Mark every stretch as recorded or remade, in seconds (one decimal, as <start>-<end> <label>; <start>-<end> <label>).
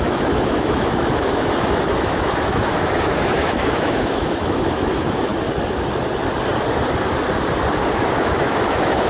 0.0-5.3 remade; 5.3-7.8 recorded; 7.8-9.1 remade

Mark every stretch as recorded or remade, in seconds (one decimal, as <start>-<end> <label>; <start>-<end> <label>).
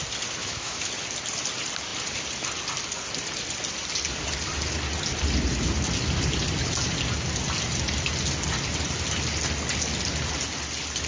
0.0-0.4 recorded; 0.4-0.9 remade; 0.9-11.1 recorded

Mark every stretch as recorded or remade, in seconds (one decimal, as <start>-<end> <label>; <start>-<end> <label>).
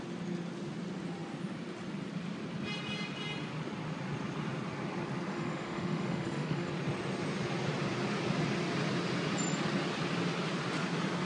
0.0-5.3 recorded; 5.3-6.7 remade; 6.7-11.3 recorded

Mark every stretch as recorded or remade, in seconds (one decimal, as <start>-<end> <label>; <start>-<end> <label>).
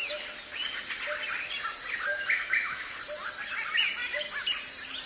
0.0-2.1 recorded; 2.1-2.9 remade; 2.9-5.1 recorded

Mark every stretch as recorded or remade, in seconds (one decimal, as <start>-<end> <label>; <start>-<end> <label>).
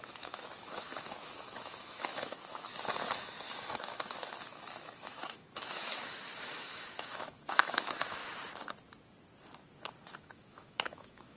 0.0-2.7 remade; 2.7-3.5 recorded; 3.5-8.2 remade; 8.2-10.2 recorded; 10.2-11.4 remade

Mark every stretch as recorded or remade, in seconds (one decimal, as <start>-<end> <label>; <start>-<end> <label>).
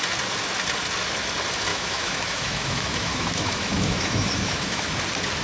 0.0-1.7 recorded; 1.7-4.9 remade; 4.9-5.4 recorded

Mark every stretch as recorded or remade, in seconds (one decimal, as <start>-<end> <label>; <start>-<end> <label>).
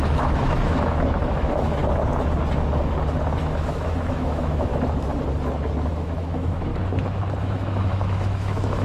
0.0-1.8 remade; 1.8-3.4 recorded; 3.4-4.7 remade; 4.7-5.9 recorded; 5.9-6.7 remade; 6.7-7.4 recorded; 7.4-8.8 remade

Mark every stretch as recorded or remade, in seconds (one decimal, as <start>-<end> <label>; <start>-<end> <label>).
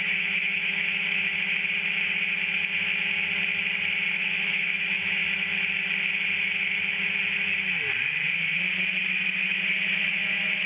0.0-1.3 remade; 1.3-4.1 recorded; 4.1-5.2 remade; 5.2-10.1 recorded; 10.1-10.7 remade